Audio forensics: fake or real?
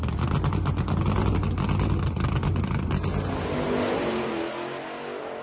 real